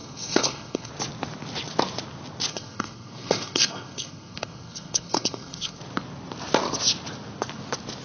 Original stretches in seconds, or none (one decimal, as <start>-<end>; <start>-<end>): 0.9-2.5; 5.8-8.0